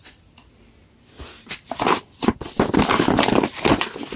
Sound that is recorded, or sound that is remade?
recorded